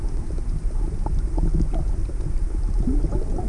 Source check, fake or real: real